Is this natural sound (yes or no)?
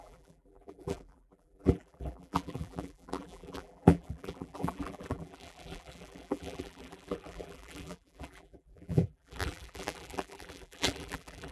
no